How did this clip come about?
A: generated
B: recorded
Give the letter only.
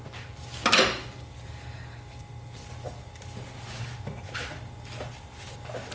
B